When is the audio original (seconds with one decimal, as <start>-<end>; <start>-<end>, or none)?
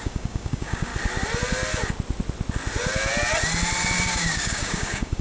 0.9-4.0